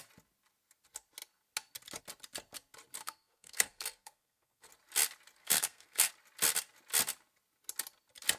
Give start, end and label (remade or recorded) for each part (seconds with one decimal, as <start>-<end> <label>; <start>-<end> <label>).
0.0-3.0 recorded; 3.0-4.7 remade; 4.7-5.4 recorded; 5.4-6.1 remade; 6.1-8.4 recorded